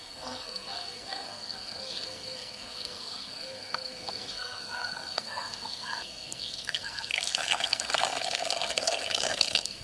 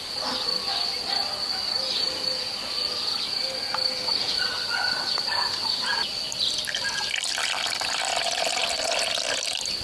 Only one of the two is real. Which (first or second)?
second